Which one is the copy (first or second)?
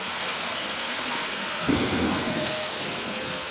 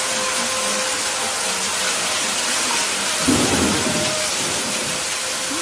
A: first